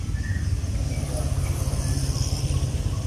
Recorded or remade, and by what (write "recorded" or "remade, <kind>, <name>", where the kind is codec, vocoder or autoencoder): recorded